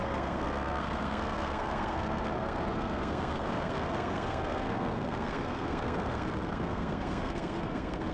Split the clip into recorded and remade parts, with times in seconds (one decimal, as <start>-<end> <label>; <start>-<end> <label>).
0.0-8.1 remade